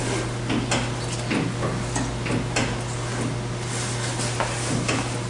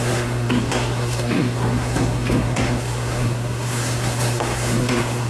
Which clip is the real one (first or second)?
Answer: first